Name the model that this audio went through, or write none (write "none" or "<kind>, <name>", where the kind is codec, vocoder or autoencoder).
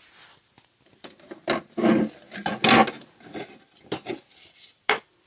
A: none